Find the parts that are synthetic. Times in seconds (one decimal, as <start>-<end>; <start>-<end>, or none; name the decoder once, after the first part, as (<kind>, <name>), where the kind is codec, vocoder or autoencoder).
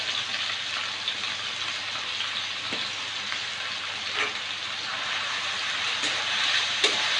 4.9-7.2 (vocoder, BigVGAN v2)